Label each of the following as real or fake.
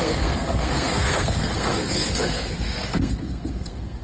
fake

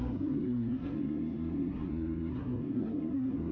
fake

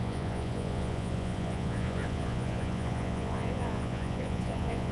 fake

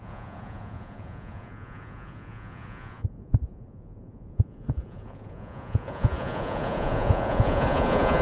fake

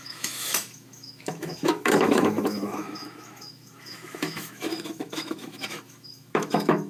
fake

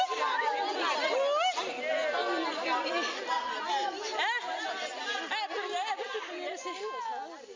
real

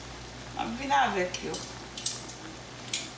real